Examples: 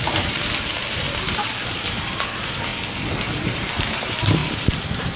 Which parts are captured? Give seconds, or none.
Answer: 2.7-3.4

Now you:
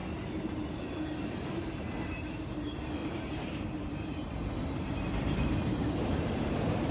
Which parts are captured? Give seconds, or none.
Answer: 0.0-1.2

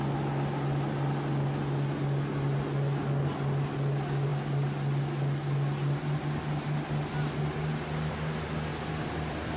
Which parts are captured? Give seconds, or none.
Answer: 0.0-8.7

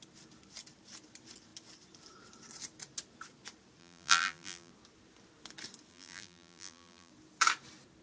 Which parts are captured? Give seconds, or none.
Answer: 0.0-3.8; 4.7-5.9; 7.1-8.0

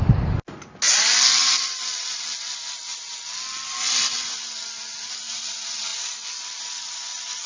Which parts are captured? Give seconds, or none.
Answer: 0.0-1.4; 2.2-7.5

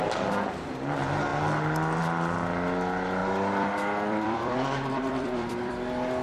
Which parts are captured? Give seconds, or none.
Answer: 0.0-3.2; 5.7-6.2

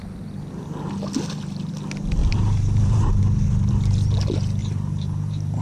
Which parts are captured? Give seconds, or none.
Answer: 0.0-2.2; 3.2-4.6

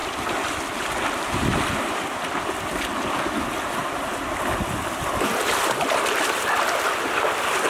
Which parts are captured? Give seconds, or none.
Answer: 0.9-7.7